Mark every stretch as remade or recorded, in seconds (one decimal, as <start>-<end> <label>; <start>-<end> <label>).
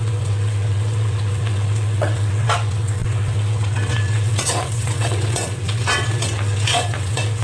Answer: 0.0-7.4 remade